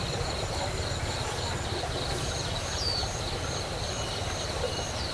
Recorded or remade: remade